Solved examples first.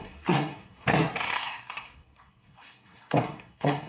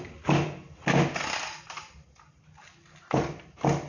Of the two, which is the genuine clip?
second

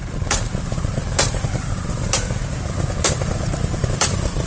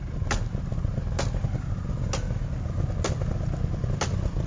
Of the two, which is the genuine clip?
second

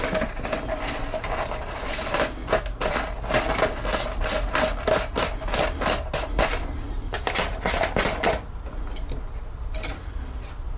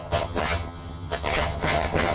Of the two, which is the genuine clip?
first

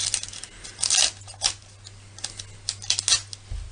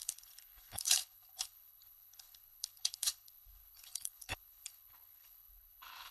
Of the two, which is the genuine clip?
first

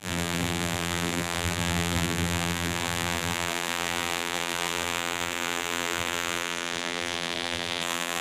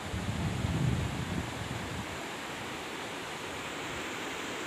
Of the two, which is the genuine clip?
second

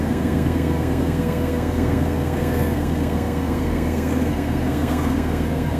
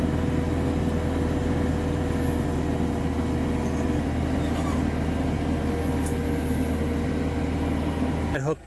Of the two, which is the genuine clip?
second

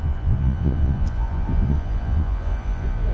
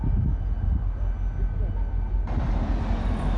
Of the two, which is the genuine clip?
second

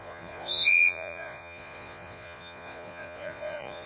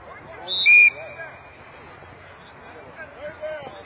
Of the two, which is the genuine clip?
second